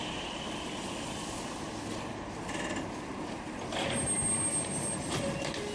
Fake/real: real